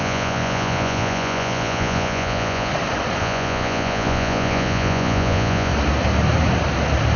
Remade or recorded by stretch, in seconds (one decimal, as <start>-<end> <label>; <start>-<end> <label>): 0.0-2.7 remade; 2.7-3.2 recorded; 3.2-5.7 remade; 5.7-7.2 recorded